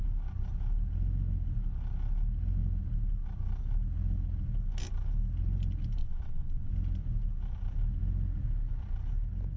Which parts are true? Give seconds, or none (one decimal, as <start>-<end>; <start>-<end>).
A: 0.0-6.0; 6.7-9.6